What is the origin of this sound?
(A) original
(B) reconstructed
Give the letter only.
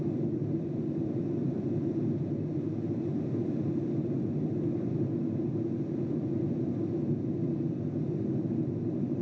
A